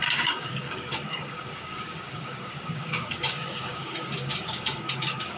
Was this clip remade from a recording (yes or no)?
yes